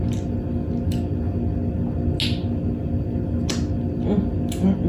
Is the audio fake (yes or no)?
no